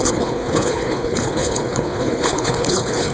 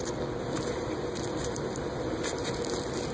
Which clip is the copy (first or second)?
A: first